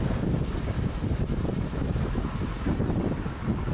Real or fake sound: real